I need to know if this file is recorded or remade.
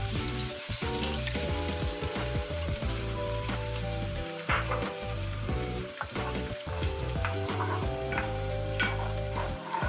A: remade